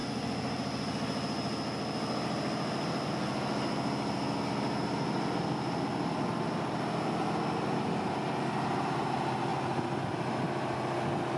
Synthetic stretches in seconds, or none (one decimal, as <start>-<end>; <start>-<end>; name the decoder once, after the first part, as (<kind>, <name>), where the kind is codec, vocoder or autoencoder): 0.0-3.1 (vocoder, BigVGAN v2)